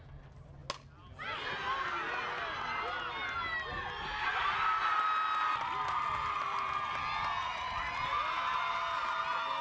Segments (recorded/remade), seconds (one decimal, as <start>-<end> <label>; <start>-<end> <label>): 0.0-7.4 recorded; 7.4-7.9 remade; 7.9-9.6 recorded